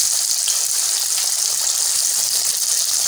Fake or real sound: real